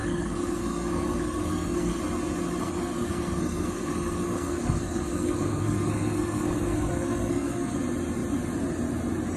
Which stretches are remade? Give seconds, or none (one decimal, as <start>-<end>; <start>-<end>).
0.0-2.0; 2.6-7.8

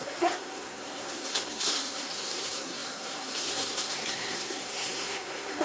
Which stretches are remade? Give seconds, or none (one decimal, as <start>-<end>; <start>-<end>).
0.0-5.6

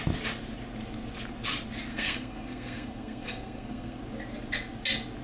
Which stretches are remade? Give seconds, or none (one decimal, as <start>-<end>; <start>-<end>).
1.9-4.0

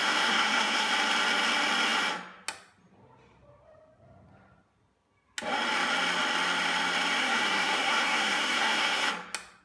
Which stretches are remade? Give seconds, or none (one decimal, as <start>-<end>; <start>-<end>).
0.0-0.9; 7.2-9.1